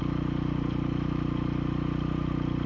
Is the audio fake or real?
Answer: fake